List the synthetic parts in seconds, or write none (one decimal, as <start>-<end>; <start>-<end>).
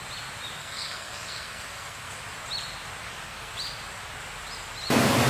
0.6-2.1; 3.0-3.5